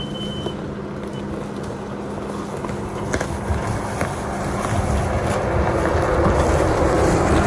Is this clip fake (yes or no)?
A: no